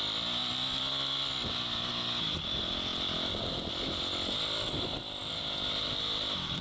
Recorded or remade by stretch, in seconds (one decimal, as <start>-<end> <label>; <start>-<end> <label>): 0.0-6.6 recorded